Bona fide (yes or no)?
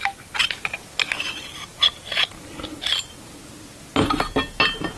yes